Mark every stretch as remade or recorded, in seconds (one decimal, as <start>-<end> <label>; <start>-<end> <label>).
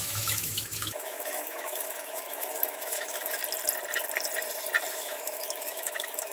0.0-3.4 remade; 3.4-4.9 recorded; 4.9-6.3 remade